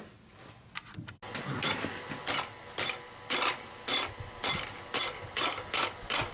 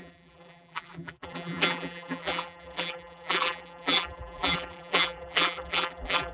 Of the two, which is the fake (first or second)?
second